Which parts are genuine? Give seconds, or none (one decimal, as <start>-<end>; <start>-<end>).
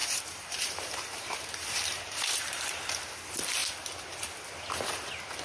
2.9-5.4